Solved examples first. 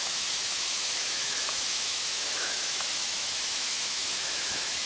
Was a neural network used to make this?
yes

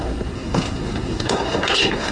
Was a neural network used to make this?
yes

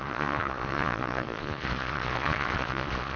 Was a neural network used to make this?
yes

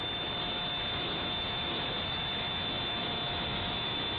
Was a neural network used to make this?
yes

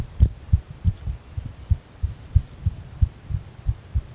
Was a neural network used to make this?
no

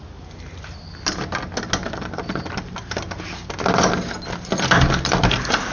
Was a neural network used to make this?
no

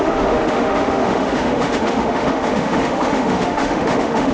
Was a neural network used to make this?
yes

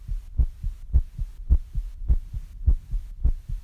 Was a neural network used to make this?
no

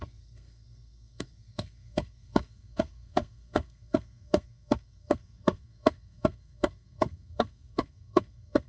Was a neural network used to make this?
yes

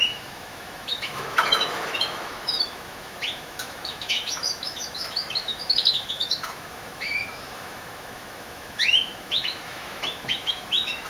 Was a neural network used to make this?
yes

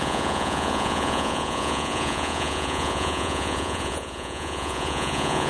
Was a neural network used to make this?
yes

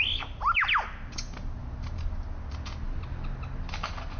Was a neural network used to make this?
no